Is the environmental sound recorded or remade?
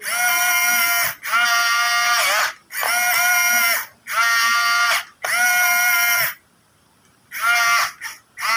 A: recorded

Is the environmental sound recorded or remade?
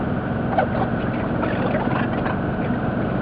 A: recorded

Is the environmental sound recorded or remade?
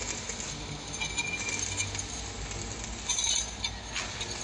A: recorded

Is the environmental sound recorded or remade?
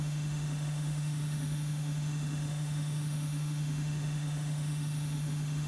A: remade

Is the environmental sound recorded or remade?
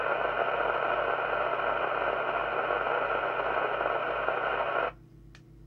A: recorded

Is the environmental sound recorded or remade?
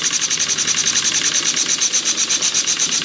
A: recorded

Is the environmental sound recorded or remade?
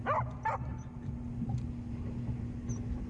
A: recorded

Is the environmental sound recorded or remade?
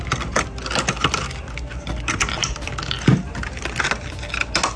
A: recorded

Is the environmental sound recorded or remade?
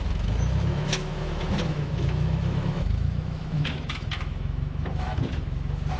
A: remade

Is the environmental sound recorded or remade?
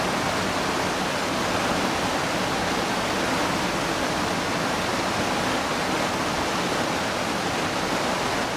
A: recorded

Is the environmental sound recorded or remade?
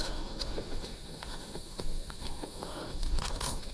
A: remade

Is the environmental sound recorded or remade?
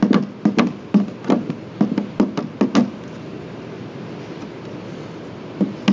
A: recorded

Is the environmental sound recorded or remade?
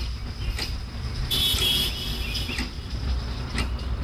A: recorded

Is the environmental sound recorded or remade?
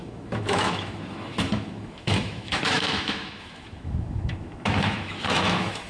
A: remade